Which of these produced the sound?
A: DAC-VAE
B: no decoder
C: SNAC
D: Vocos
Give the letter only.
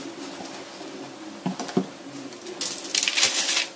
B